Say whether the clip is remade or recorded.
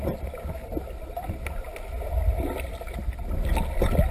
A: recorded